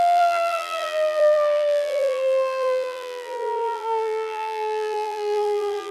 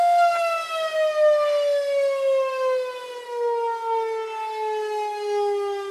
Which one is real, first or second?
second